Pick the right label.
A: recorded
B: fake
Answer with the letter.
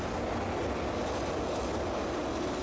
A